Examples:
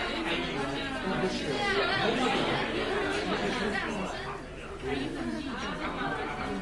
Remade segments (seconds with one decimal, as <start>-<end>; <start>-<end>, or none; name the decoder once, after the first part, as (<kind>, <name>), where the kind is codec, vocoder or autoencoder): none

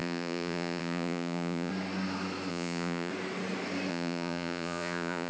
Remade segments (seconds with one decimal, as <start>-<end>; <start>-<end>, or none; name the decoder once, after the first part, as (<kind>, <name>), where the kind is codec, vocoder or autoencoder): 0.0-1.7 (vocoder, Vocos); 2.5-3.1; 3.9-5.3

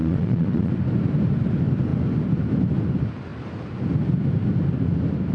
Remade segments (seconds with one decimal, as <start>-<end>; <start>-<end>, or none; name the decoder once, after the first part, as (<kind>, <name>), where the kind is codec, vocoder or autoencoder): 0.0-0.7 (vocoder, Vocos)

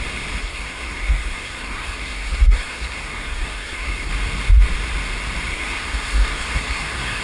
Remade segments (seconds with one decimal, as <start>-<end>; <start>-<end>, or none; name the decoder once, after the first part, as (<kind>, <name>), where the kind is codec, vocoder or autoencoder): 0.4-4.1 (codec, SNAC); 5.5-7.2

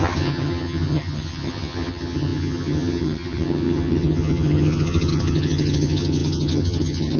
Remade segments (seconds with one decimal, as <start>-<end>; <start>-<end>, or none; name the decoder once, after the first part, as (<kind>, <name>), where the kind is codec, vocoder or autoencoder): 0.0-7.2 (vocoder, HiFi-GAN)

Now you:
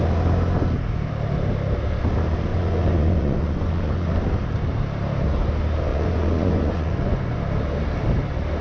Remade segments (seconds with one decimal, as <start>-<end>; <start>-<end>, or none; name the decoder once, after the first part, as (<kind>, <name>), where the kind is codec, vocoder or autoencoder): 2.5-4.1 (vocoder, Vocos); 5.9-7.4

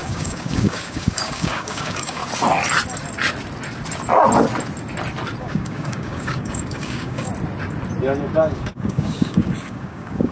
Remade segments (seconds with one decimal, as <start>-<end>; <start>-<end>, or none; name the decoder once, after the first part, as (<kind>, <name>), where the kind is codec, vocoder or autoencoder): 0.0-2.2 (codec, DAC); 5.4-7.3; 8.2-10.3